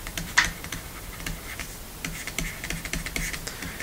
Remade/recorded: recorded